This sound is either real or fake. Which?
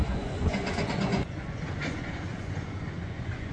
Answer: fake